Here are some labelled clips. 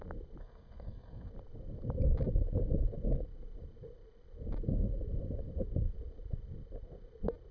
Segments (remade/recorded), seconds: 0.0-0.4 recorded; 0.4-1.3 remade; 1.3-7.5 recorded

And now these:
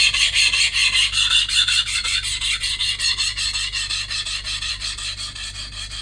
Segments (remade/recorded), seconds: 0.0-6.0 recorded

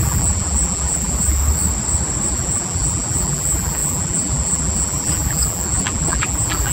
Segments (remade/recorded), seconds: 0.0-1.4 remade; 1.4-2.3 recorded; 2.3-6.7 remade

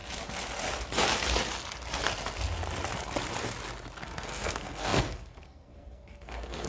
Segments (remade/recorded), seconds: 0.0-4.0 recorded; 4.0-6.7 remade

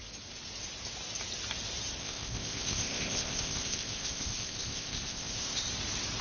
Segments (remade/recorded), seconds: 0.0-2.0 recorded; 2.0-5.7 remade; 5.7-6.2 recorded